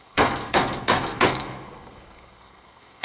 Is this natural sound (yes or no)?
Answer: no